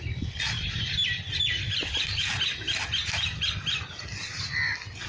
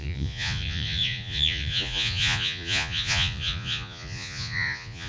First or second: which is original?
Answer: first